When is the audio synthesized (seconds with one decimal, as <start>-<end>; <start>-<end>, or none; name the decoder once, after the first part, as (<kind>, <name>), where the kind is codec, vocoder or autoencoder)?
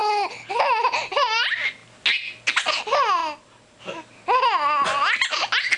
0.0-0.5 (codec, HILCodec)